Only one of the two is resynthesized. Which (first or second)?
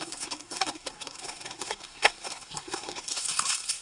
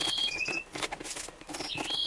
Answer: first